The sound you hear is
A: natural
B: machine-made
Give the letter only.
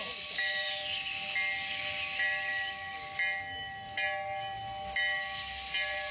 A